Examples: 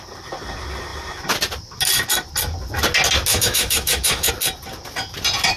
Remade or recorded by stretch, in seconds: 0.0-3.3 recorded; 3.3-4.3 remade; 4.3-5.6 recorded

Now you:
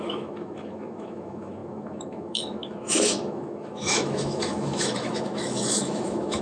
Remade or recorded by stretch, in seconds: 0.0-6.4 remade